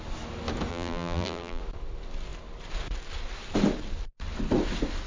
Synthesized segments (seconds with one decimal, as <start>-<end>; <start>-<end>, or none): 0.7-1.6